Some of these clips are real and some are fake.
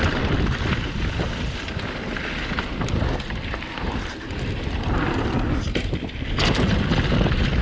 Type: real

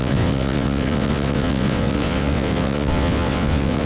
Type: fake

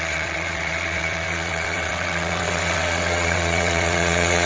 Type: fake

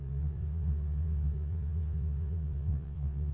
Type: fake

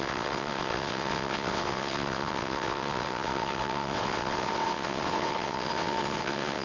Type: fake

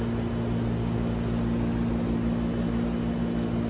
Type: real